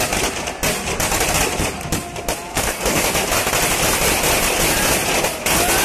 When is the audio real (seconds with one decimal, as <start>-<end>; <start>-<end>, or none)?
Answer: 0.0-2.5; 3.0-5.8